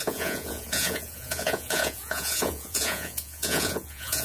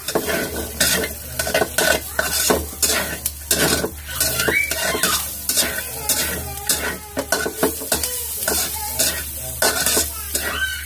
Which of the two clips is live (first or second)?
second